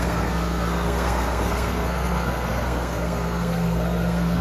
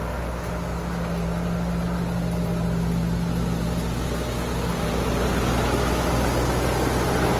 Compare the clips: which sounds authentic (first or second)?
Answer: second